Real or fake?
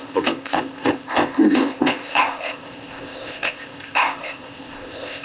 fake